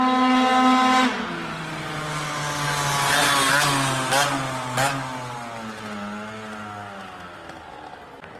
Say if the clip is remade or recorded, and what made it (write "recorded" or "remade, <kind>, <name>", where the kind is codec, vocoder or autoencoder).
recorded